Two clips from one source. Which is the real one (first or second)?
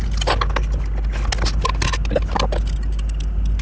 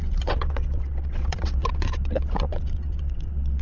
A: first